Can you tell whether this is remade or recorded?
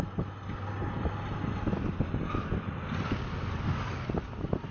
recorded